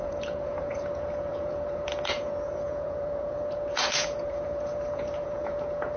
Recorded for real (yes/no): no